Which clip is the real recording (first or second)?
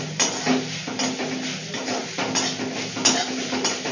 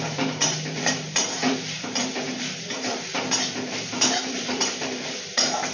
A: first